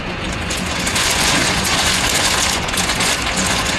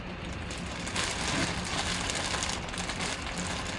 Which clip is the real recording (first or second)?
second